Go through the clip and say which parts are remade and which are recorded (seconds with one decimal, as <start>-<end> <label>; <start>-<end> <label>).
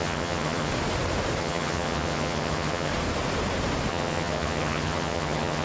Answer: 0.0-0.7 remade; 0.7-1.4 recorded; 1.4-2.9 remade; 2.9-3.9 recorded; 3.9-5.6 remade